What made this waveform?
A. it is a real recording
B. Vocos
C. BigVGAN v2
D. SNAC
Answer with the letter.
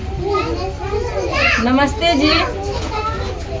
A